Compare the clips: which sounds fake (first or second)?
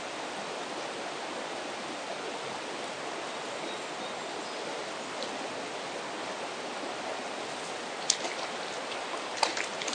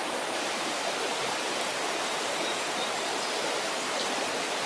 second